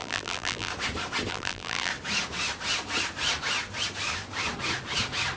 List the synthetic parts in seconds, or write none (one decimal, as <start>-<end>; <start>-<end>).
0.0-0.7; 1.3-1.9